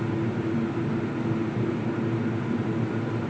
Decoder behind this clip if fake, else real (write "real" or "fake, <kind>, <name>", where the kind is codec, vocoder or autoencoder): real